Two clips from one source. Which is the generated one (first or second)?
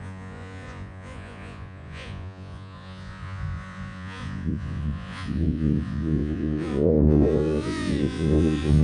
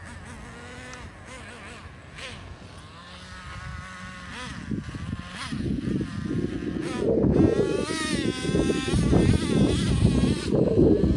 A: first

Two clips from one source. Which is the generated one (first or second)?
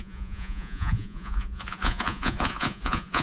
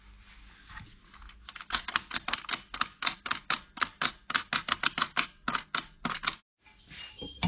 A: first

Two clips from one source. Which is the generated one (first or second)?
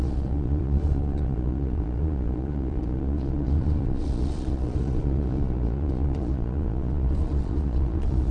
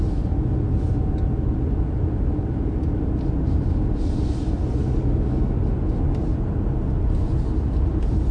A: first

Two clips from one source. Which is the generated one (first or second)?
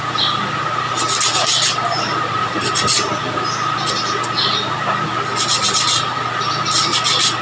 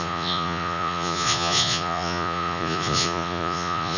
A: second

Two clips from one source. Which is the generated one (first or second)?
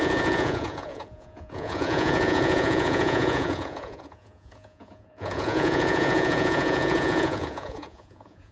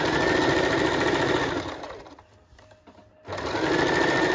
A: first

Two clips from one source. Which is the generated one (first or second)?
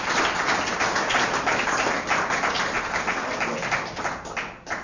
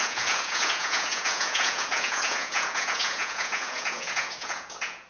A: second